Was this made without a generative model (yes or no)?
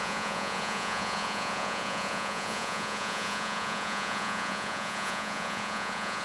no